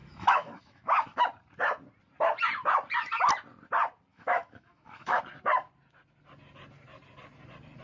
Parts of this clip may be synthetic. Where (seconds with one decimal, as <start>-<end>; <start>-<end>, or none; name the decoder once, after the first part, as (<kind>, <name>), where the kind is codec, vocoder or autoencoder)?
0.0-1.2 (autoencoder, DAC-VAE); 4.1-5.2